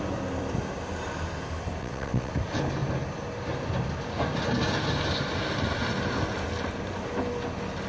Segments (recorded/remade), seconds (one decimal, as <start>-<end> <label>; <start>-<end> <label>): 0.0-1.8 recorded; 1.8-2.3 remade; 2.3-7.9 recorded